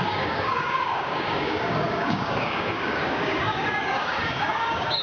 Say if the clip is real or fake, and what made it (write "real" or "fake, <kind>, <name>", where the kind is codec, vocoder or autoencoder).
fake, codec, DAC